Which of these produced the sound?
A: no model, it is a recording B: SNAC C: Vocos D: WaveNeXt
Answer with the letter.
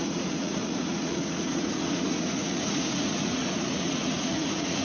C